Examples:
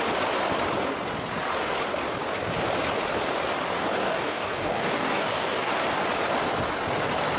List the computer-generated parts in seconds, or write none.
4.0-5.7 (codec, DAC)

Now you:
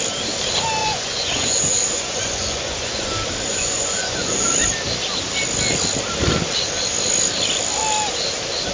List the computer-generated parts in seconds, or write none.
0.8-3.1 (vocoder, Vocos); 3.5-4.5

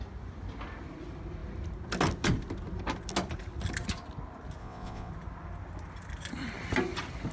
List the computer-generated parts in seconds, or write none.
4.6-5.1 (vocoder, Vocos)

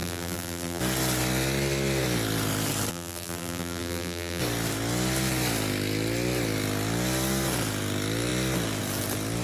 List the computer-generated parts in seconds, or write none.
0.0-0.8 (vocoder, BigVGAN v2); 2.9-4.4

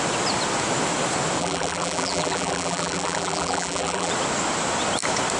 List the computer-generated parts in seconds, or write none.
1.4-4.1 (vocoder, BigVGAN v2)

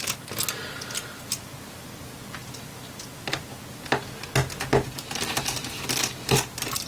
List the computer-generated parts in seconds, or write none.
none

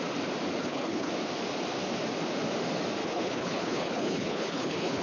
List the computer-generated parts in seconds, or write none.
0.6-1.1 (codec, HILCodec); 3.0-5.0

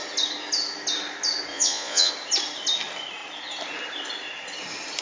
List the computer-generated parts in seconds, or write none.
1.5-2.1 (vocoder, Vocos)